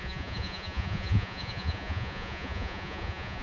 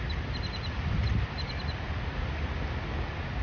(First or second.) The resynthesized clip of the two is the first